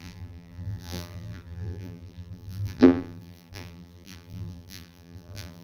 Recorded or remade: remade